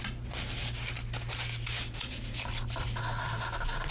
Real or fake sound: real